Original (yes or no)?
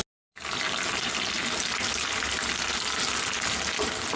yes